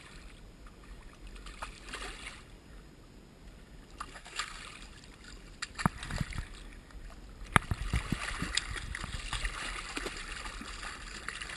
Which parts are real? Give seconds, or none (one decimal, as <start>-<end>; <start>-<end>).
0.0-4.1; 4.6-11.6